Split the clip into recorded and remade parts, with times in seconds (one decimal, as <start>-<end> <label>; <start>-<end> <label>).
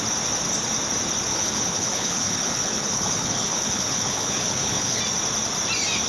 0.0-1.3 recorded; 1.3-5.0 remade; 5.0-6.1 recorded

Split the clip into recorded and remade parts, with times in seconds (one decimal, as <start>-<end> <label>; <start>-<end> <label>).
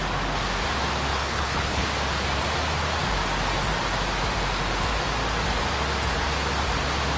0.0-1.1 recorded; 1.1-1.9 remade; 1.9-7.2 recorded